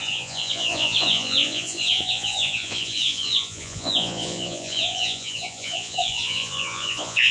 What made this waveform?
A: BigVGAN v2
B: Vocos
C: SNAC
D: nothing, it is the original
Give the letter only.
B